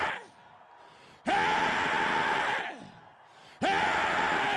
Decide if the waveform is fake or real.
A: real